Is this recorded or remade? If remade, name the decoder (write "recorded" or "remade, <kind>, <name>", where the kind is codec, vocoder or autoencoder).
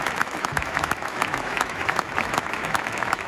remade, autoencoder, DAC-VAE